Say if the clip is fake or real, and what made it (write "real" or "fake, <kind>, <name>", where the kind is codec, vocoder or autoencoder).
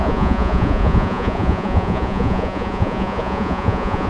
fake, vocoder, Vocos